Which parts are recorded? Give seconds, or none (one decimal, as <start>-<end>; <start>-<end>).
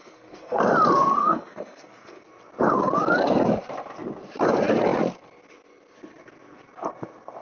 0.6-1.2; 2.3-7.4